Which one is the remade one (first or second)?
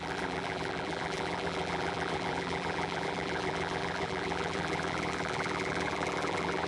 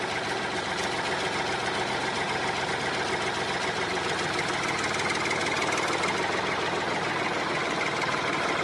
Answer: first